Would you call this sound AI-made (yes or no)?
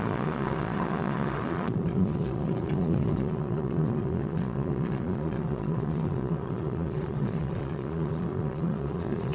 yes